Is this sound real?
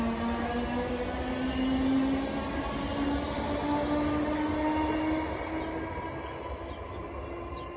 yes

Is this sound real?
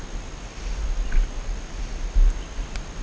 yes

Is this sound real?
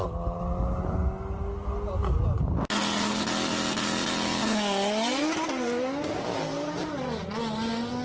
yes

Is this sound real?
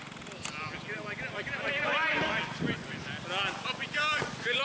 yes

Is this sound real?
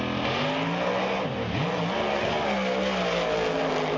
yes